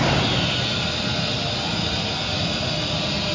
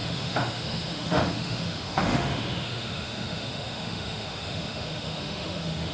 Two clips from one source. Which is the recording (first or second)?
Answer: first